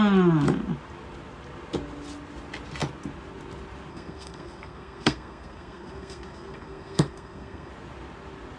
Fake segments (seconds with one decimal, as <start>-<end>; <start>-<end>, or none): 3.9-7.7